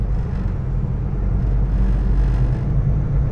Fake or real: real